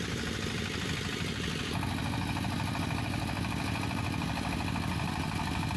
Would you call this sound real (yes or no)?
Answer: yes